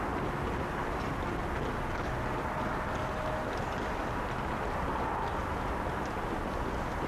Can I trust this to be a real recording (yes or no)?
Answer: yes